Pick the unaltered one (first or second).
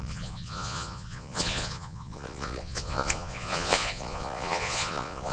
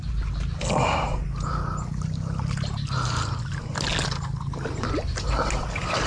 second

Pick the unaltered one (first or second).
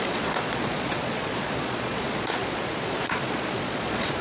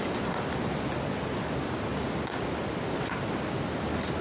second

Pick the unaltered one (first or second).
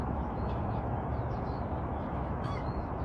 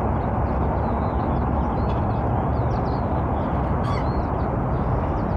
second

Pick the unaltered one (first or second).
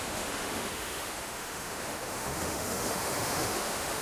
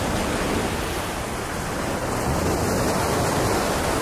second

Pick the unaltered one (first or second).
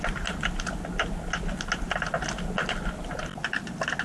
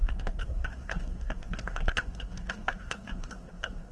first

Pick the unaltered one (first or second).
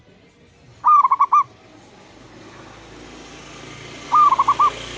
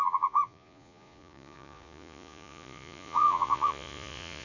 first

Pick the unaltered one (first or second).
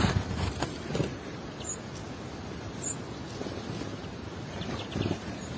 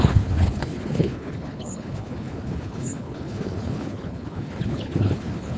first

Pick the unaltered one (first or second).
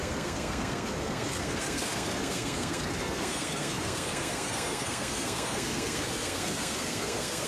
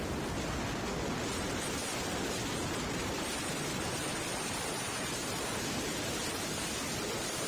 second